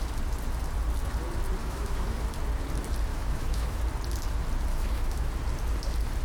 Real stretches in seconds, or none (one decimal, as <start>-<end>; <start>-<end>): 0.0-1.6; 2.2-3.1; 3.8-4.7; 5.3-6.2